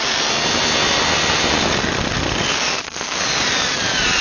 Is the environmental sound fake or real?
real